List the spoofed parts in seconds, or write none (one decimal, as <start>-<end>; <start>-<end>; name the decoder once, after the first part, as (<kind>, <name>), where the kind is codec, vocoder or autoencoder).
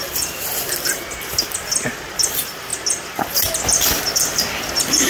none